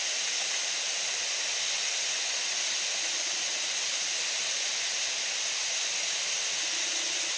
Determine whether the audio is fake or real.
real